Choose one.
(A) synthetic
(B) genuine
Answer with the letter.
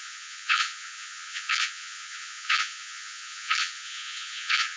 A